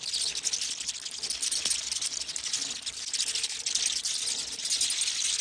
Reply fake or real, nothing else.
real